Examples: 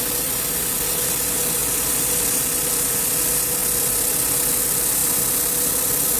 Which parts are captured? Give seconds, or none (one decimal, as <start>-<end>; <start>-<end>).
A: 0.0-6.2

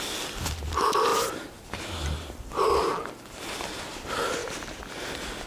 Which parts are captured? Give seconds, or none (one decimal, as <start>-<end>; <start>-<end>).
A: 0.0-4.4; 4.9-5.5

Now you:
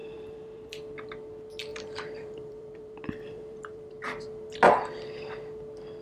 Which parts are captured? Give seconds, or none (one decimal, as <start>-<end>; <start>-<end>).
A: 0.7-1.7; 3.9-6.0

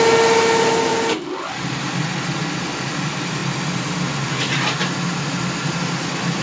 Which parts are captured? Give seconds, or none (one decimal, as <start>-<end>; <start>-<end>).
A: 0.0-6.4